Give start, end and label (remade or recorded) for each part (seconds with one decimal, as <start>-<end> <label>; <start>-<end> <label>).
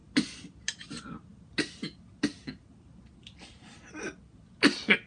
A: 0.0-5.1 recorded